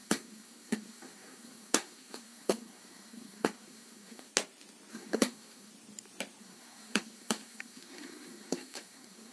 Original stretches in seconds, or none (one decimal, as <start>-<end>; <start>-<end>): 4.3-4.9; 5.7-6.4